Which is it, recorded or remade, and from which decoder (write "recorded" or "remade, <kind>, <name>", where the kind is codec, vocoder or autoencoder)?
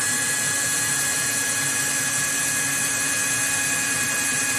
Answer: recorded